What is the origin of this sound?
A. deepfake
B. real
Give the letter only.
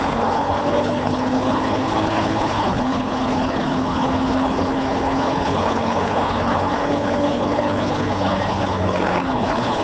A